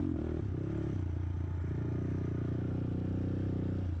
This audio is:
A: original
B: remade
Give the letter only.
A